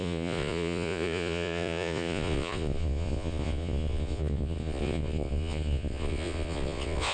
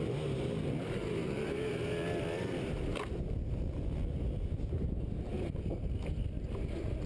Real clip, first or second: second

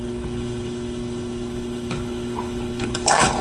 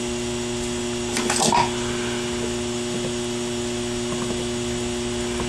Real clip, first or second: second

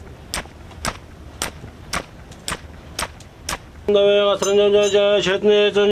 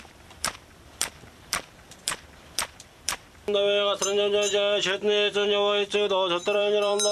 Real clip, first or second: first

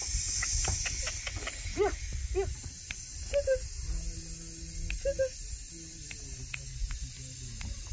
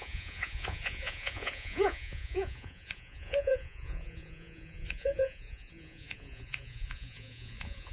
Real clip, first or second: first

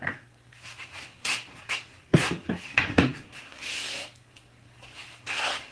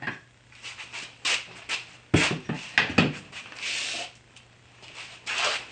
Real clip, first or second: second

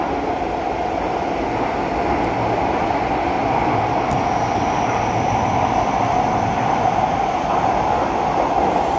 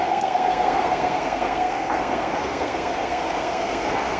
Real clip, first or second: first